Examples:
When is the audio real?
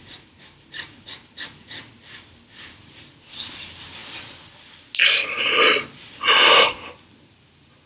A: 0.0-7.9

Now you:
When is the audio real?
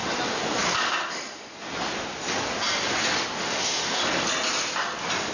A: 0.0-3.4; 4.0-5.3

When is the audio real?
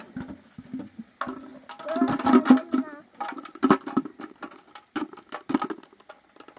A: 0.0-6.6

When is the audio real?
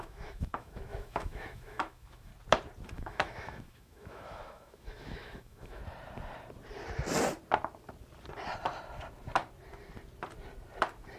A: 2.3-2.9; 5.8-11.2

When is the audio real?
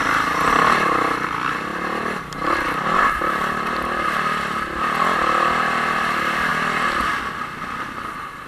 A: 0.0-8.5